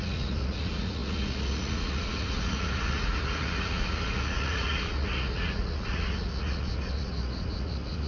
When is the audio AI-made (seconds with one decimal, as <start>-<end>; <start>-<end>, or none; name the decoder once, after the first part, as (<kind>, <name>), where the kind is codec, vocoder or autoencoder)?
0.0-8.1 (vocoder, Vocos)